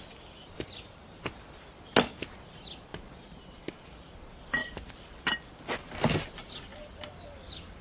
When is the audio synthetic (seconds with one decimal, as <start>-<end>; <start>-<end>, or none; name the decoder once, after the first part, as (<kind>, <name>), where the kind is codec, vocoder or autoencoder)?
2.9-3.7 (vocoder, BigVGAN v2); 4.6-5.3; 6.7-7.8